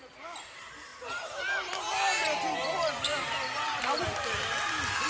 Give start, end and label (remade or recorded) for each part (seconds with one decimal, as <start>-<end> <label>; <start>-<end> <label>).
0.0-5.1 recorded